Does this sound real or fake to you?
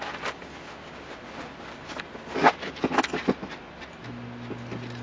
real